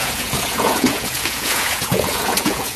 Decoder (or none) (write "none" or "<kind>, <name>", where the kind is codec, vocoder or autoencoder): vocoder, Vocos